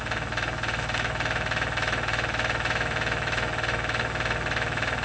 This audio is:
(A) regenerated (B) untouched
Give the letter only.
A